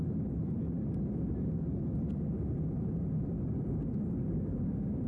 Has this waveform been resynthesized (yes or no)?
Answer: no